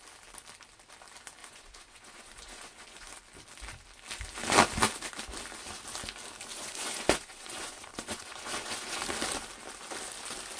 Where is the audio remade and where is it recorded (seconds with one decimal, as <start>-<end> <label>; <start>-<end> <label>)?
0.0-1.4 recorded; 1.4-3.1 remade; 3.1-6.5 recorded; 6.5-9.0 remade; 9.0-10.6 recorded